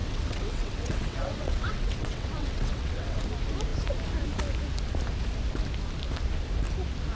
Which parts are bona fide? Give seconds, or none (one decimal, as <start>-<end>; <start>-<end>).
3.2-7.1